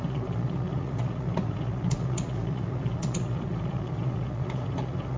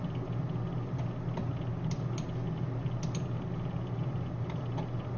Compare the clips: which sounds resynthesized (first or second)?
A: first